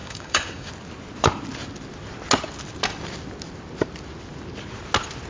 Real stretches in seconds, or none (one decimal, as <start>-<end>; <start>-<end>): 0.7-5.3